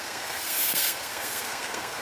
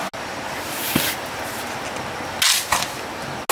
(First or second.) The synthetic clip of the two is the first